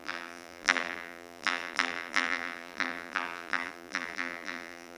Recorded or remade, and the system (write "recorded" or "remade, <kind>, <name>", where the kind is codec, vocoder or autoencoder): remade, vocoder, BigVGAN v2